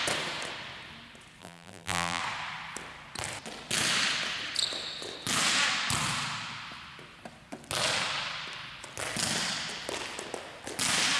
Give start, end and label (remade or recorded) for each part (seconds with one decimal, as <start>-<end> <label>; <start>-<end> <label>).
0.0-1.4 recorded; 1.4-2.2 remade; 2.2-11.2 recorded